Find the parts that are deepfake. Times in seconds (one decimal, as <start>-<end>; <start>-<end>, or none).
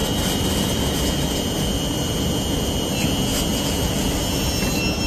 0.0-3.1; 3.5-4.2